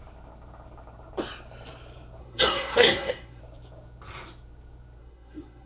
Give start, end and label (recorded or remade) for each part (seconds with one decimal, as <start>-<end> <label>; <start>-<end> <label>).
0.0-2.2 recorded; 2.2-3.4 remade; 3.4-5.0 recorded; 5.0-5.7 remade